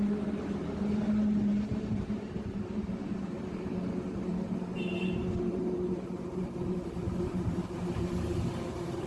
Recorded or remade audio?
remade